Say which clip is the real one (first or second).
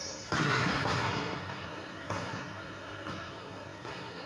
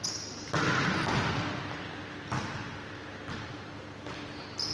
second